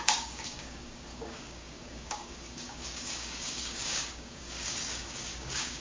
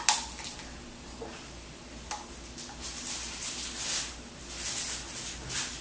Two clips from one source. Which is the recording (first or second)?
second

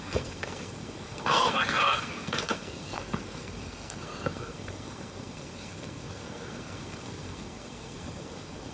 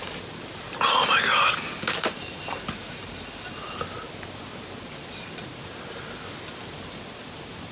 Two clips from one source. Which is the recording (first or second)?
second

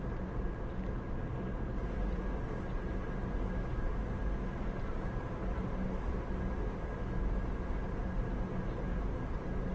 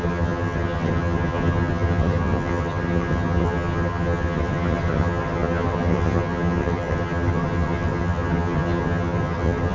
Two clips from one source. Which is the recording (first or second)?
first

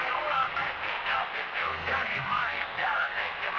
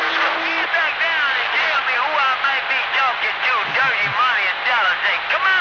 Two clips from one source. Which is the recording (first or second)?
second